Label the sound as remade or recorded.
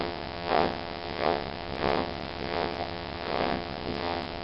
remade